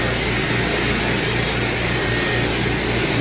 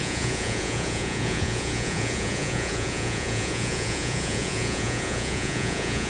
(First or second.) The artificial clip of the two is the second